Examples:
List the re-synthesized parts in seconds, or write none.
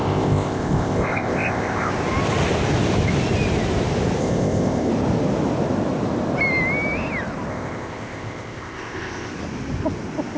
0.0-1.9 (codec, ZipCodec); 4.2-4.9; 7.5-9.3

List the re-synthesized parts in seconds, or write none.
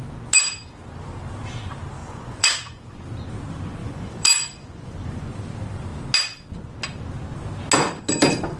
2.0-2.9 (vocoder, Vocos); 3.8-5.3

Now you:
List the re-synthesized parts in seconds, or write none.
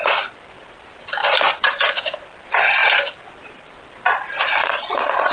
4.6-5.3 (vocoder, Vocos)